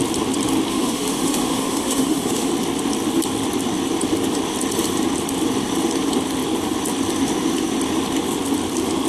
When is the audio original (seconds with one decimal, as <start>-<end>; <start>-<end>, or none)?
0.0-0.7; 2.5-9.1